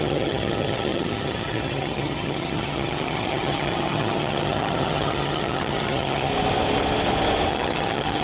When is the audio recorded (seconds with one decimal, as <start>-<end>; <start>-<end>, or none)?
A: 6.3-7.5